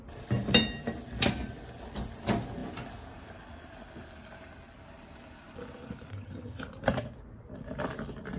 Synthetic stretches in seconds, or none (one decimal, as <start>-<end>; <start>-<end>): 6.1-6.6